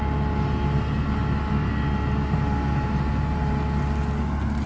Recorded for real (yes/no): yes